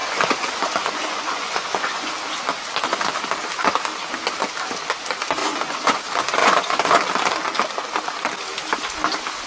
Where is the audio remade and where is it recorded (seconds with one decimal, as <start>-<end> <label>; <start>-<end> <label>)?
0.0-2.1 remade; 2.1-5.4 recorded; 5.4-6.0 remade; 6.0-6.4 recorded; 6.4-7.0 remade; 7.0-9.5 recorded